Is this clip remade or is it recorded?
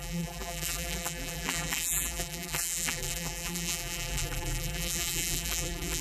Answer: remade